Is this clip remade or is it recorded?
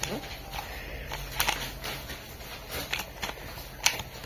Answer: recorded